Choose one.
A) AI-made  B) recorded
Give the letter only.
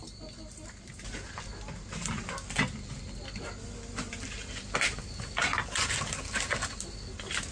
B